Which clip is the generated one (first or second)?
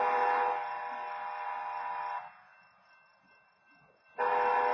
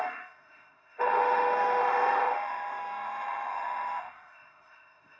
second